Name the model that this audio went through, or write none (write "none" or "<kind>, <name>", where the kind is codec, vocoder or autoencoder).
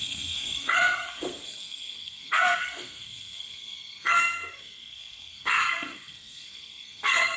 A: codec, SNAC